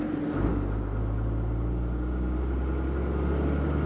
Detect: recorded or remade recorded